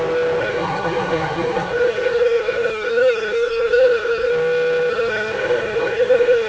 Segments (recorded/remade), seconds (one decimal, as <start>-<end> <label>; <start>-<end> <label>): 0.0-0.4 recorded; 0.4-4.3 remade; 4.3-4.9 recorded; 4.9-6.5 remade